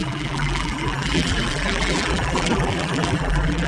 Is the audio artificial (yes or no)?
yes